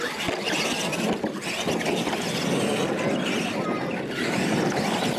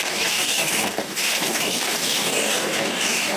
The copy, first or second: second